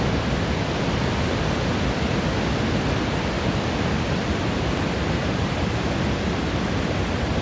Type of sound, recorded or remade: recorded